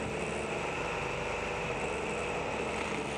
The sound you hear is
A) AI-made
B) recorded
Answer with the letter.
B